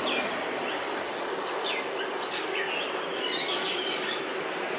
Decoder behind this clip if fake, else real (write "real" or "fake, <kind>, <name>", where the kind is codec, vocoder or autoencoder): real